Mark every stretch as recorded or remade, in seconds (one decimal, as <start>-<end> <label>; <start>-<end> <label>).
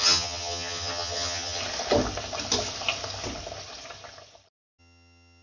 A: 0.0-1.6 remade; 1.6-4.8 recorded; 4.8-5.4 remade